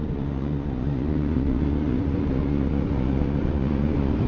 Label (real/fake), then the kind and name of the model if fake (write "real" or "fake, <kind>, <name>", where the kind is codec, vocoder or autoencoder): fake, vocoder, Vocos